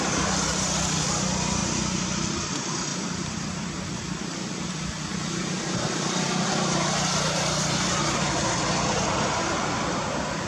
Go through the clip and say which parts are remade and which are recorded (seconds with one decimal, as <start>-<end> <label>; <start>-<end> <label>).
0.0-1.6 remade; 1.6-2.3 recorded; 2.3-2.9 remade; 2.9-5.3 recorded; 5.3-10.5 remade